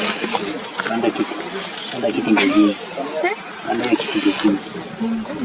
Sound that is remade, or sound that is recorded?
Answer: recorded